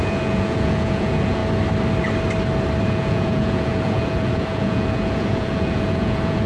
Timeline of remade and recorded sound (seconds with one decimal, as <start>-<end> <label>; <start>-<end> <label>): 0.0-1.4 remade; 1.4-2.8 recorded; 2.8-6.5 remade